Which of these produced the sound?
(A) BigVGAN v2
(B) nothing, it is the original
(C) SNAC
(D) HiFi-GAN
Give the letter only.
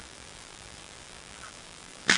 A